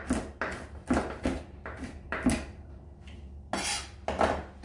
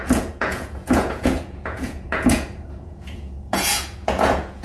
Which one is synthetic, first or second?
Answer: second